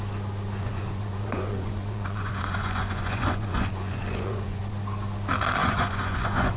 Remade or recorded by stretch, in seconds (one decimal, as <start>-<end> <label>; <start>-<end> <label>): 0.0-0.6 recorded; 0.6-4.6 remade; 4.6-5.6 recorded; 5.6-6.6 remade